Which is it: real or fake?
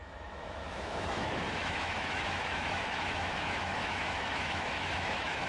fake